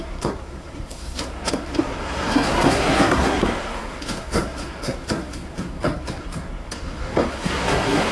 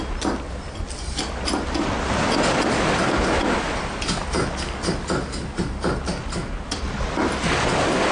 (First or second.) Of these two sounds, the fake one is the first